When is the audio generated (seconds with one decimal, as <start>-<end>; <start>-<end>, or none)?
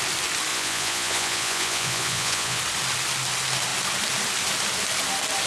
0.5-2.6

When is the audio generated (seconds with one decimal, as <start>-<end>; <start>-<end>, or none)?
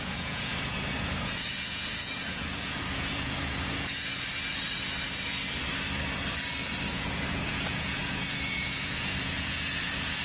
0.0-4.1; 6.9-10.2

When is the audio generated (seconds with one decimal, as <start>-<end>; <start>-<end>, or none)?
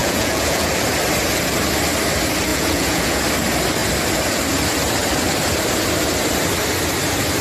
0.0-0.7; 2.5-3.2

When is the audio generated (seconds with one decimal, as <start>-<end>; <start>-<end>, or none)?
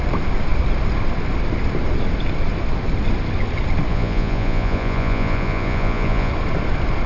3.9-6.3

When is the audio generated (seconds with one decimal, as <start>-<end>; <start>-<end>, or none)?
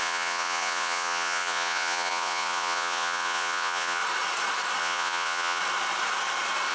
0.0-4.0; 4.8-5.6